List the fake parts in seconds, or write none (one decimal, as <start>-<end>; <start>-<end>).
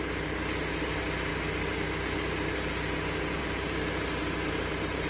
none